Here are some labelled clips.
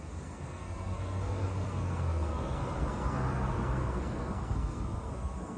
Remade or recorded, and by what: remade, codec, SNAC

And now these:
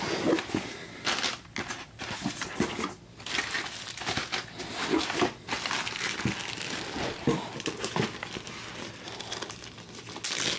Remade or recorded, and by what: recorded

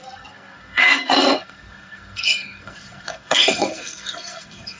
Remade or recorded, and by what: remade, codec, SNAC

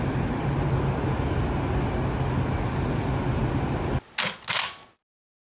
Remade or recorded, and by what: recorded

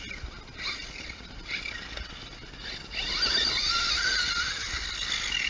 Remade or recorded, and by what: recorded